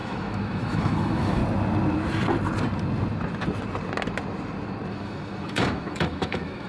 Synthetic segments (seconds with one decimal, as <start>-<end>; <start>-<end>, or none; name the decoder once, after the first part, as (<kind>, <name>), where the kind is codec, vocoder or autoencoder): 0.0-1.4 (autoencoder, DAC-VAE); 4.9-6.7